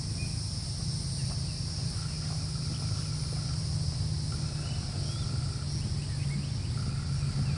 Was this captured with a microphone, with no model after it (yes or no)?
yes